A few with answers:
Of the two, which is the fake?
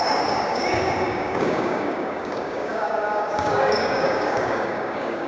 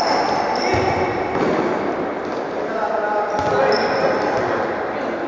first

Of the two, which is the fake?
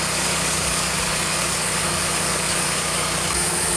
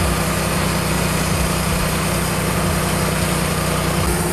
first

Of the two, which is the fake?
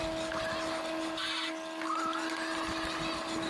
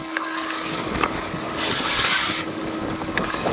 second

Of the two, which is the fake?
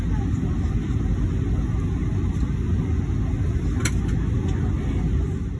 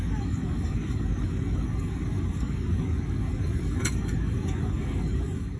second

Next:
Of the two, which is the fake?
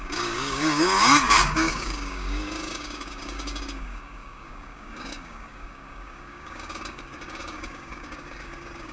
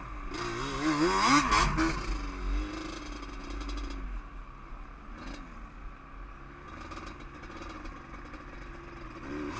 first